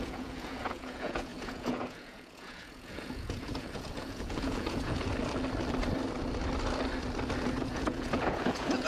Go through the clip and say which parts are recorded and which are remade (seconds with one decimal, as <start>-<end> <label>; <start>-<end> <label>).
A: 0.0-5.1 remade; 5.1-7.6 recorded; 7.6-8.9 remade

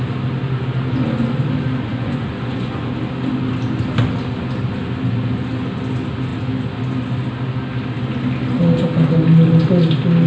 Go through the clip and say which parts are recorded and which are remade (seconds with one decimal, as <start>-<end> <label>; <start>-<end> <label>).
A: 0.0-1.9 recorded; 1.9-2.9 remade; 2.9-10.3 recorded

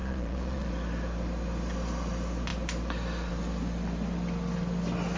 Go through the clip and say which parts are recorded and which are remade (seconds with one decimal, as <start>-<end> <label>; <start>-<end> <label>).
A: 0.0-0.7 remade; 0.7-5.2 recorded

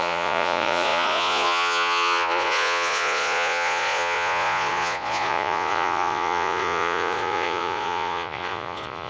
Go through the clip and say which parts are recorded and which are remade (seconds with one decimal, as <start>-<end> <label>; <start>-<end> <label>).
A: 0.0-9.1 remade

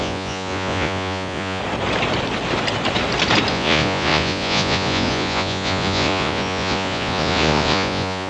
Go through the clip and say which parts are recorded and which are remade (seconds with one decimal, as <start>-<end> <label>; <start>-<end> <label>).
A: 0.0-1.6 remade; 1.6-3.5 recorded; 3.5-8.3 remade

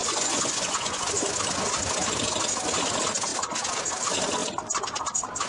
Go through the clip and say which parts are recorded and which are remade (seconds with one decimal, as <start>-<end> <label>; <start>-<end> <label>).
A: 0.0-1.2 remade; 1.2-5.5 recorded